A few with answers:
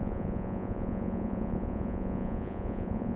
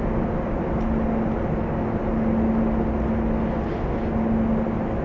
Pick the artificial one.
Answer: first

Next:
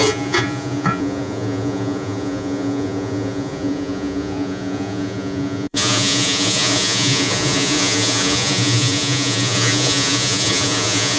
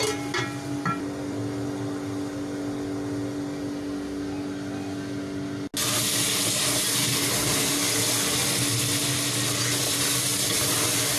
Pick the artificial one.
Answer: first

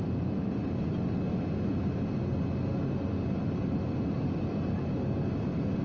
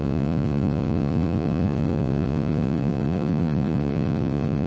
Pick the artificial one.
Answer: second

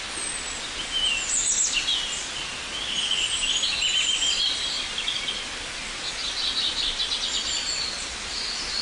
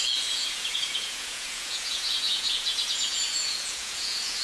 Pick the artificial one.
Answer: second